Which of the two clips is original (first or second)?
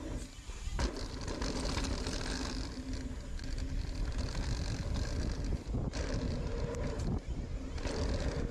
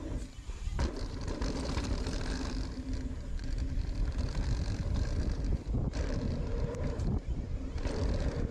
first